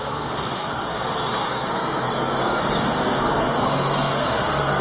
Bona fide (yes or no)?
no